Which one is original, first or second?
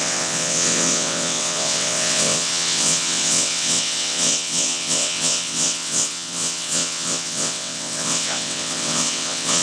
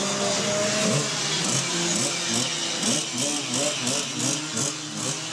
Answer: second